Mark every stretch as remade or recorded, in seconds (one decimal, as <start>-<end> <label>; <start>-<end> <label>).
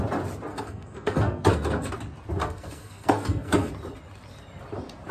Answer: 0.0-0.5 recorded; 0.5-1.9 remade; 1.9-2.4 recorded; 2.4-3.7 remade; 3.7-5.1 recorded